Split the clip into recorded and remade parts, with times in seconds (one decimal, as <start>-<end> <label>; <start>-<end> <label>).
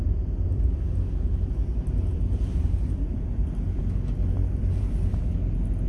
0.0-0.5 recorded; 0.5-1.5 remade; 1.5-2.1 recorded; 2.1-3.8 remade; 3.8-4.4 recorded; 4.4-5.1 remade; 5.1-5.9 recorded